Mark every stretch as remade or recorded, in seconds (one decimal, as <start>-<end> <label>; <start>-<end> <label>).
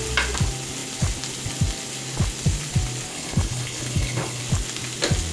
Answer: 0.0-3.1 recorded; 3.1-4.4 remade; 4.4-5.3 recorded